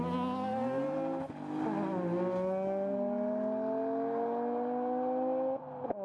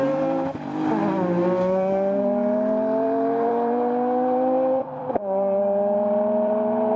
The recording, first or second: first